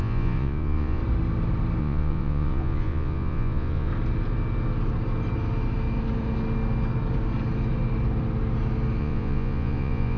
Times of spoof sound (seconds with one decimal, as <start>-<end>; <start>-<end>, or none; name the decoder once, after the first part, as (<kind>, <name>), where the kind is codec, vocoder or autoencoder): 0.0-1.0 (vocoder, Vocos); 1.8-3.9; 9.0-10.2